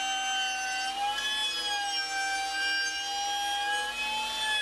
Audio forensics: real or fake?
real